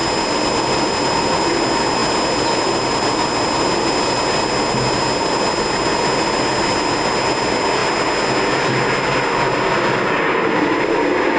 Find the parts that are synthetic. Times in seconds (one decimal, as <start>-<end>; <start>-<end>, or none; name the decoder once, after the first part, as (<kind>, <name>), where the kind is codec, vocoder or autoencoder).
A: none